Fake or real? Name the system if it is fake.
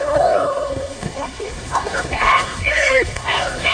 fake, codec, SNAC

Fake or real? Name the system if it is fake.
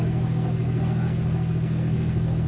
fake, codec, SNAC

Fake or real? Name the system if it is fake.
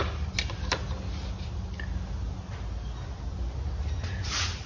real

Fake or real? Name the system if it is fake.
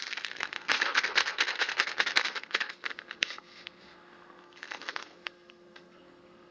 fake, codec, SNAC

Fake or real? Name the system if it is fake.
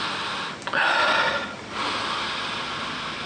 real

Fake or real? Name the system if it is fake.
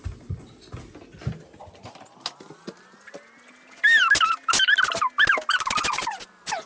real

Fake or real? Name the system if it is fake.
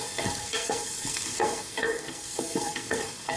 fake, codec, SNAC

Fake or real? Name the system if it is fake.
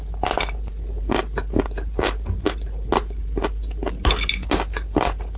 real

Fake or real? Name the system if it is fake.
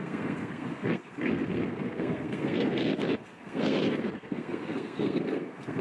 fake, codec, SNAC